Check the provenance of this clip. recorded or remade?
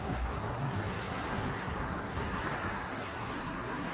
remade